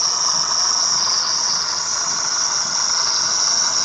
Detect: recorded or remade remade